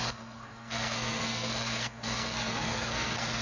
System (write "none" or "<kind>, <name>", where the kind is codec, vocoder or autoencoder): codec, SNAC